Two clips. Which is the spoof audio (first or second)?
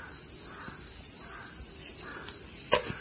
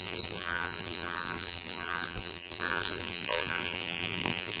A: second